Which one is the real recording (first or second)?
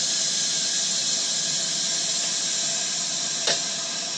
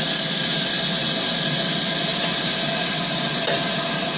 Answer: second